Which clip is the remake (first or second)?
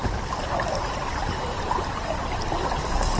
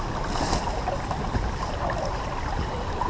first